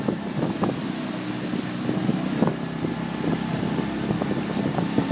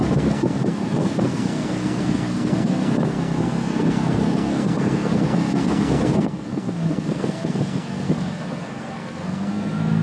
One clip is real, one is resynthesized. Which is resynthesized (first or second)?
second